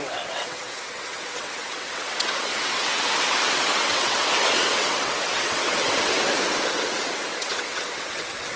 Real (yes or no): no